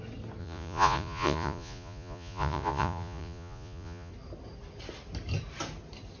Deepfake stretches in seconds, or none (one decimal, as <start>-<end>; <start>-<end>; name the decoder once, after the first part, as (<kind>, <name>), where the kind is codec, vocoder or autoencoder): 0.4-4.1 (vocoder, Vocos)